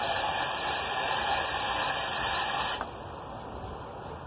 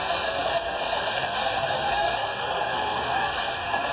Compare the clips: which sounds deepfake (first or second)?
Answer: second